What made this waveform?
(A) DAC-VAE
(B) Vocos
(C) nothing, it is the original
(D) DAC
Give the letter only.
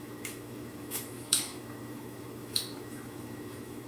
A